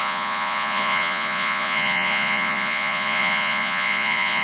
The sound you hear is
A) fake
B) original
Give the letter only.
A